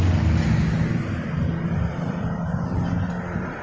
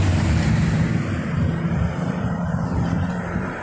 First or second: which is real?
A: first